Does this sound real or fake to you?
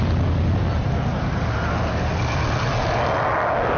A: real